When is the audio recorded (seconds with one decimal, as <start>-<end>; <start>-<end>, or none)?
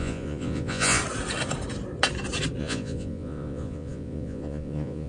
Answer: 1.0-2.6